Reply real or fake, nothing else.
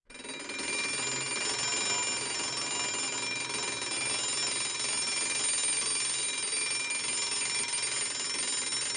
real